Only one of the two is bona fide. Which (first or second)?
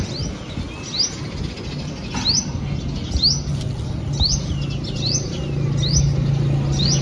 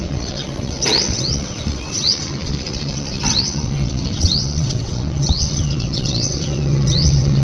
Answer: first